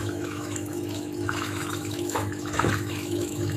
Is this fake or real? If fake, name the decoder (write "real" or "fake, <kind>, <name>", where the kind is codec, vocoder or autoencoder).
fake, autoencoder, DAC-VAE